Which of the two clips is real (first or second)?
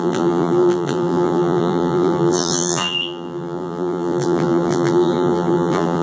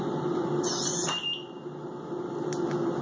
second